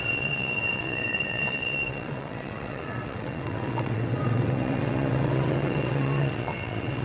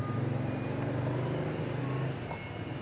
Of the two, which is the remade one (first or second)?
first